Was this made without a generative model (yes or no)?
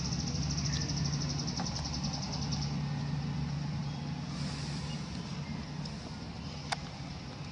yes